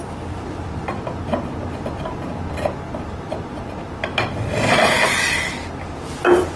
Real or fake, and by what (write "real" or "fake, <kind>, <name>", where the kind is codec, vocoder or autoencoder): real